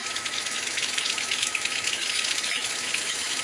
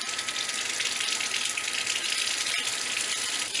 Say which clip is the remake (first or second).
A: first